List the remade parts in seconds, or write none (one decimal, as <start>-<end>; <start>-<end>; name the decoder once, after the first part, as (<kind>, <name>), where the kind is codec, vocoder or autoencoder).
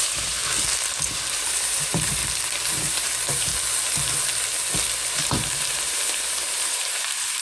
0.0-0.4 (vocoder, BigVGAN v2); 1.4-2.2; 2.7-3.5; 5.1-7.4